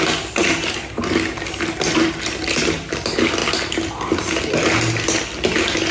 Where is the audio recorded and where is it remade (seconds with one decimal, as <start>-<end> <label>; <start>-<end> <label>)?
0.0-5.9 recorded